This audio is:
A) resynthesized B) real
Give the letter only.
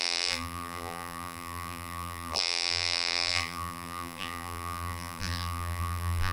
A